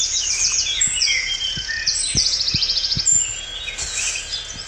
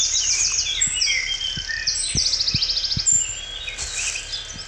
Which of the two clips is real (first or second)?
second